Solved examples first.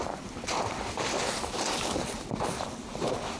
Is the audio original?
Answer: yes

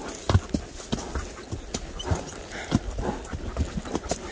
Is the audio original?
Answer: yes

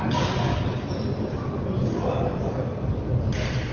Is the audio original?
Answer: yes